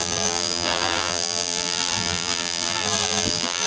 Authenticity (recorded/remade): remade